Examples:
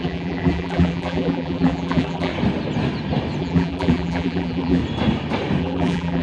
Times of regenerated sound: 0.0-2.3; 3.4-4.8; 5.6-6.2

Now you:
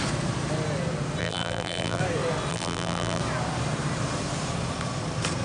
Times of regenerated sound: 1.2-2.0; 2.5-3.2

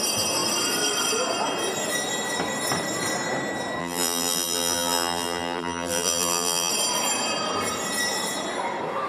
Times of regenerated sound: 3.8-6.7

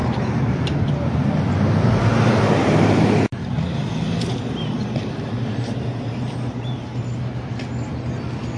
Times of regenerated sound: 0.0-0.8; 3.7-7.2

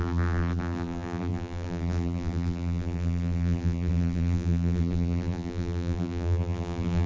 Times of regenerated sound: 0.0-7.1

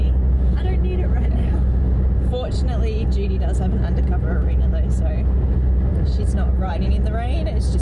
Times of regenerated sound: 5.9-6.7

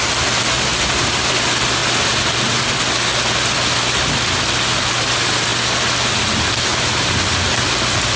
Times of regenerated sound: 0.7-1.3; 1.8-2.7; 6.7-7.2